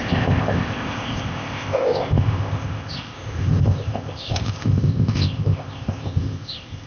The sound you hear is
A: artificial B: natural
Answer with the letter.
A